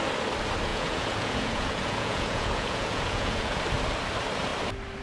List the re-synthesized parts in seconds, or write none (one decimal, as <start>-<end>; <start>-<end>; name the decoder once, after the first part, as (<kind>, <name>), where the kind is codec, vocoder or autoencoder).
0.7-3.6 (vocoder, Vocos)